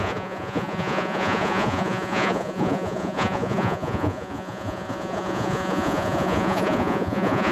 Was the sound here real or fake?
fake